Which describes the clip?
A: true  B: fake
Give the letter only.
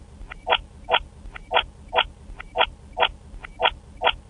A